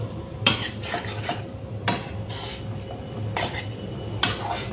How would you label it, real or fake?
real